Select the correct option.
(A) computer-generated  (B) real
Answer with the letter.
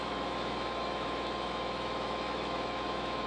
A